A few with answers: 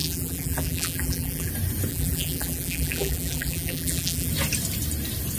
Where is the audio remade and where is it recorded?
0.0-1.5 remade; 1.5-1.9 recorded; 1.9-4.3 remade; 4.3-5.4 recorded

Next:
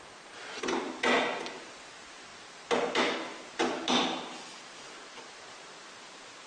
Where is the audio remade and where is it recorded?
0.0-6.5 recorded

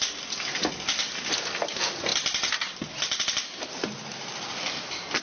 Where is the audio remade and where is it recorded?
0.0-5.2 recorded

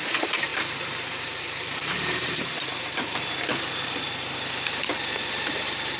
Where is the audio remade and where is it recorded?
0.0-6.0 remade

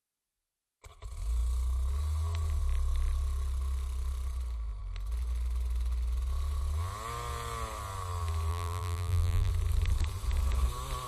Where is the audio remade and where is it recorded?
0.0-8.5 recorded; 8.5-9.5 remade; 9.5-11.1 recorded